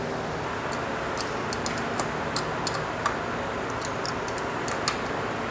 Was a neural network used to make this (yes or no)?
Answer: no